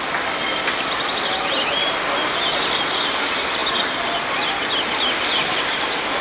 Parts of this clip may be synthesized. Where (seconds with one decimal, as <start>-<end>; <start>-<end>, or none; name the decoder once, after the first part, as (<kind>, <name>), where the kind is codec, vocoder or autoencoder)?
none